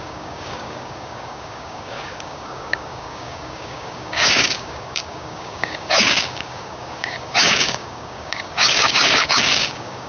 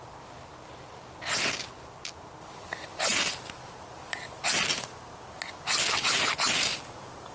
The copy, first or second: first